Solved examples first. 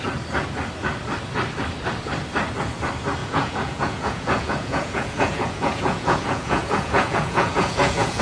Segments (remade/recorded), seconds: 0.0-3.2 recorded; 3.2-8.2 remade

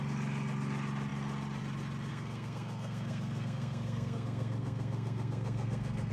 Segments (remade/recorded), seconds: 0.0-2.1 recorded; 2.1-6.1 remade

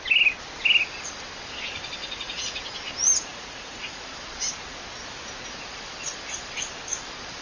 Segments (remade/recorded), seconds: 0.0-2.0 recorded; 2.0-2.6 remade; 2.6-3.3 recorded; 3.3-4.1 remade; 4.1-7.4 recorded

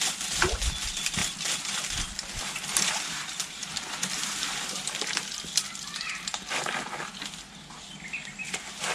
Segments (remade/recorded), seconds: 0.0-8.9 recorded